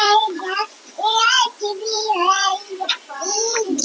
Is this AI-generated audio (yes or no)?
yes